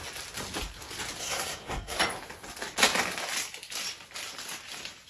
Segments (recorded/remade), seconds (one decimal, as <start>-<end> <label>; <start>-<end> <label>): 0.0-1.2 recorded; 1.2-2.0 remade; 2.0-5.1 recorded